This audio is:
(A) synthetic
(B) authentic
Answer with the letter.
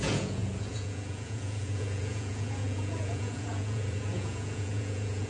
A